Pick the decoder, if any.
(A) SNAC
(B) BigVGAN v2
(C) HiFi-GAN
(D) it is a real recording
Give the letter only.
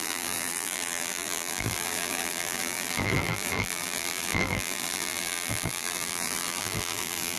B